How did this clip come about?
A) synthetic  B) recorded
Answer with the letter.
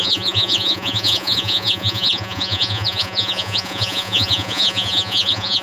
A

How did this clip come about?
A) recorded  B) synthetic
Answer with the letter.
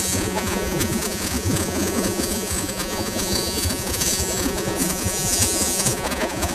B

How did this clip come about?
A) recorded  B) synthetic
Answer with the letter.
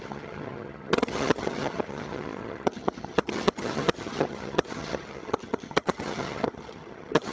B